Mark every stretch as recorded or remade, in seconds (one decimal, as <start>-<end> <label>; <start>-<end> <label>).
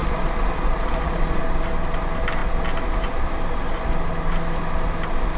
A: 0.0-1.4 remade; 1.4-5.4 recorded